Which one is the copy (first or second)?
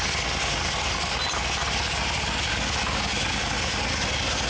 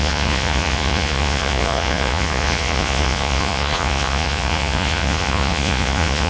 second